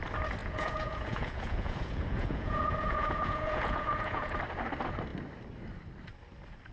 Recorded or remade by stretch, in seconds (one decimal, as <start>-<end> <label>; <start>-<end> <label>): 0.0-0.4 recorded; 0.4-4.4 remade; 4.4-6.7 recorded